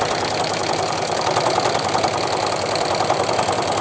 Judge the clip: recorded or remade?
recorded